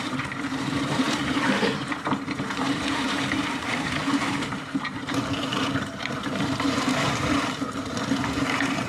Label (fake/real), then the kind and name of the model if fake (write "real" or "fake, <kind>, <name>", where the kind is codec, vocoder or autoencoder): fake, vocoder, BigVGAN v2